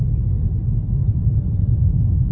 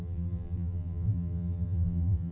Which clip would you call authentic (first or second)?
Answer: first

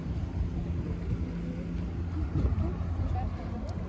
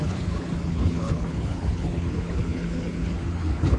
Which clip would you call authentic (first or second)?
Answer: first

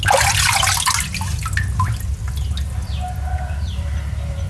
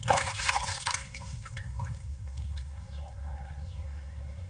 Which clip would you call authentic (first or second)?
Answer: first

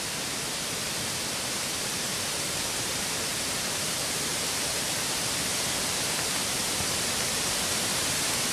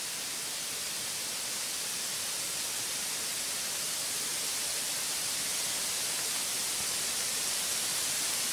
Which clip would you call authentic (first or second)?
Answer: second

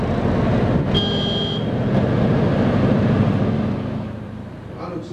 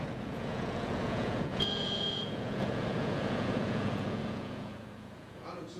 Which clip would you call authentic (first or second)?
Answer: first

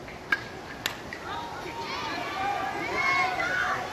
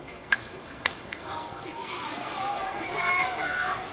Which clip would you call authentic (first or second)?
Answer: first